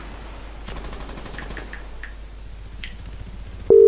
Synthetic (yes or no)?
no